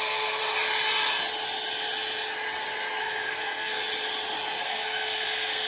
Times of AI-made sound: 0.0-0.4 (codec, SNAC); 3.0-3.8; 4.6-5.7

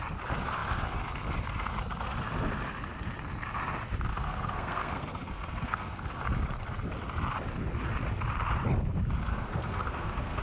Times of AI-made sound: 4.1-6.2 (codec, SNAC); 9.3-10.4

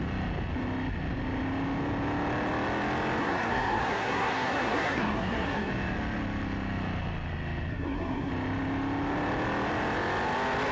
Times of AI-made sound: 3.2-5.7 (codec, SNAC); 7.7-8.3

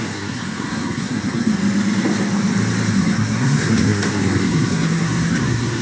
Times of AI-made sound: 0.0-1.6 (codec, SNAC); 2.9-5.8

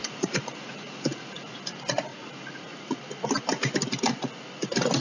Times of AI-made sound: 0.0-1.6 (vocoder, Vocos); 2.1-3.0

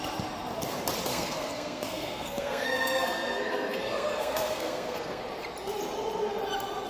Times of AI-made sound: 1.1-5.2 (codec, SNAC)